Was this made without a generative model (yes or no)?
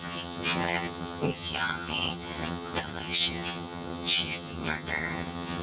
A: no